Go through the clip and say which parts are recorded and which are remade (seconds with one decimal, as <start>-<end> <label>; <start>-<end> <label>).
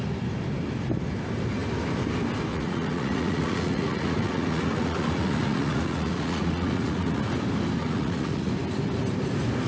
0.0-2.5 recorded; 2.5-7.3 remade; 7.3-7.8 recorded; 7.8-8.5 remade; 8.5-9.7 recorded